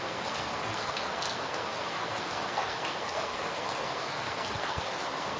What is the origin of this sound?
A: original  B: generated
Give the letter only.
B